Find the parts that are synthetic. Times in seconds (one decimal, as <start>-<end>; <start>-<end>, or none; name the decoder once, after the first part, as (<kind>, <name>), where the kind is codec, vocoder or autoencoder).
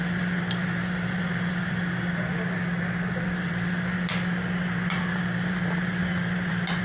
none